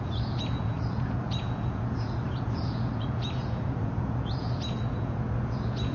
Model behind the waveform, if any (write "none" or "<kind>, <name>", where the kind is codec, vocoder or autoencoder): vocoder, Vocos